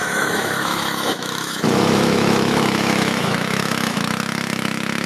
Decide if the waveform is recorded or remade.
remade